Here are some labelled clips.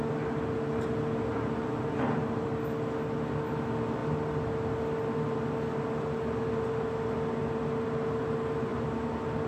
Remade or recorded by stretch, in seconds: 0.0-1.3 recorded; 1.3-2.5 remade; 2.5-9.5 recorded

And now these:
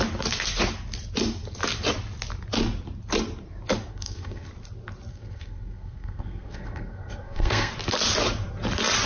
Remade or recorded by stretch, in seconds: 0.0-3.9 recorded; 3.9-4.5 remade; 4.5-5.1 recorded; 5.1-7.7 remade; 7.7-9.1 recorded